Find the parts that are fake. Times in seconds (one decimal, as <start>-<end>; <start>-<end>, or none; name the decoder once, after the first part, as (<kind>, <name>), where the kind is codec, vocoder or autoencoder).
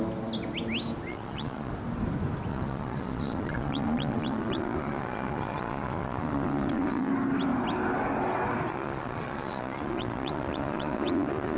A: 1.1-1.7 (vocoder, Vocos); 2.5-7.1; 8.7-11.6